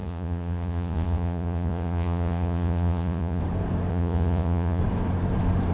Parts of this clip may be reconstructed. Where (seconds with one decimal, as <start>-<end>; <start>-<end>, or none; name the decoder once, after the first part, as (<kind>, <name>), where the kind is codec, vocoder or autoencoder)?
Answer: 0.0-3.4 (vocoder, Vocos); 3.9-4.8